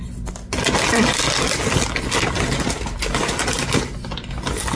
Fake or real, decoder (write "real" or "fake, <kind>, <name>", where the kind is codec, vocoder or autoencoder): real